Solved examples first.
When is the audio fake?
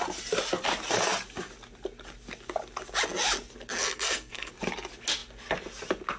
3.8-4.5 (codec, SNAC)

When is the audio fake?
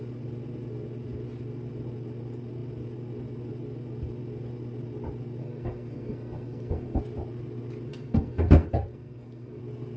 5.4-7.0 (codec, SNAC); 7.9-9.6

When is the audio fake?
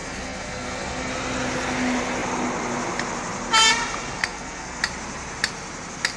0.0-1.1 (codec, SNAC); 4.2-4.8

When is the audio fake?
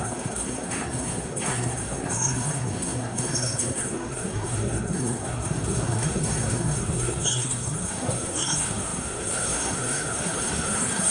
0.0-11.1 (codec, SNAC)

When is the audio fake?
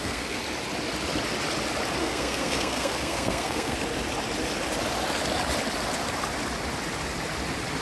0.0-0.4 (codec, SNAC); 2.0-3.8